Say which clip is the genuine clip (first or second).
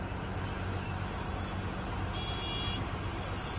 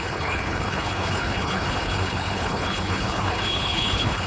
first